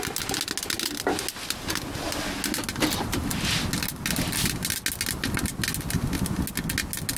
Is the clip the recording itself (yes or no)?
yes